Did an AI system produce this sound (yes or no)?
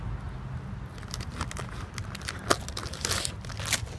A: no